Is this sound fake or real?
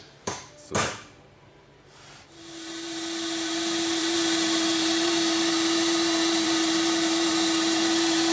fake